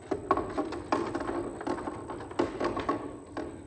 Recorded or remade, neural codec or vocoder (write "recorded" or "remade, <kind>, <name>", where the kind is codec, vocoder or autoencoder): recorded